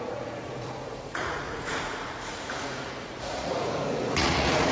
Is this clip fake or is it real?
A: fake